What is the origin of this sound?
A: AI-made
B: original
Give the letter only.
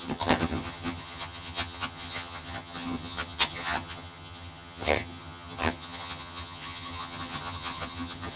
A